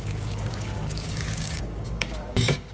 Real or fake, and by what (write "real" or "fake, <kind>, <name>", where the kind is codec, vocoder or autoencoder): fake, codec, DAC